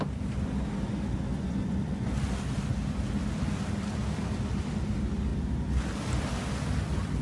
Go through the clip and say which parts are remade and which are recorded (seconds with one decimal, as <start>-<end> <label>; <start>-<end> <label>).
0.0-1.3 recorded; 1.3-2.1 remade; 2.1-7.2 recorded